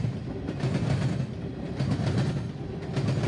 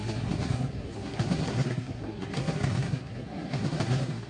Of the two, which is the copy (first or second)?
second